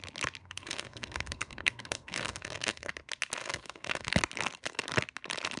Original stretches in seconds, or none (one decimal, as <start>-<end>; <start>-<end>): 0.0-0.4; 2.9-3.4; 4.1-5.6